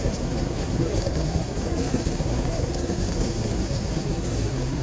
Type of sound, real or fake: fake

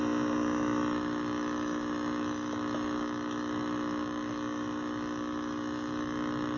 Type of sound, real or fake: fake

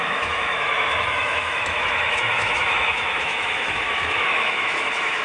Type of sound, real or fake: fake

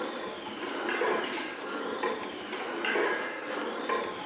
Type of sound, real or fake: real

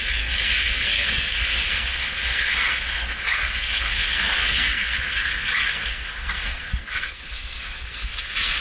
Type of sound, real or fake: fake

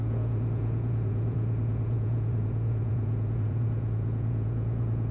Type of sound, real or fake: fake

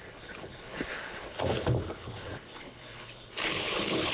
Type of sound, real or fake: fake